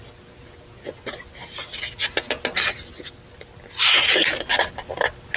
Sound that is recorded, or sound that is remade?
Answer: recorded